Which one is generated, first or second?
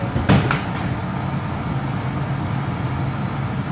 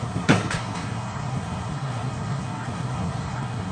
second